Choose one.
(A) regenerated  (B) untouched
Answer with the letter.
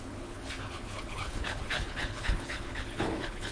A